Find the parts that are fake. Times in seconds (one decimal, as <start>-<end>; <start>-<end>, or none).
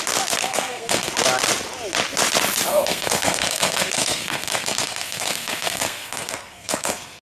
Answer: 0.4-1.1; 2.7-7.2